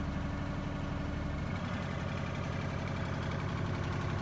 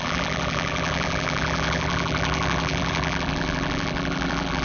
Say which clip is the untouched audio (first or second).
first